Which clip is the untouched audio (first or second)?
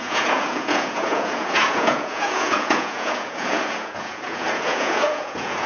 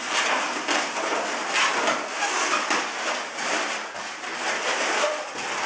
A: second